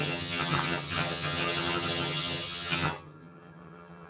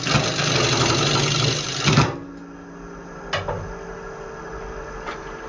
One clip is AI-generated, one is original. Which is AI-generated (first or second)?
first